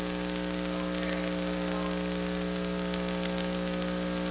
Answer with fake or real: real